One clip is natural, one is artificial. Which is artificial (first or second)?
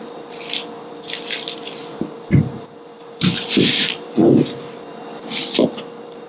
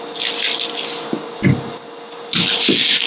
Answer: first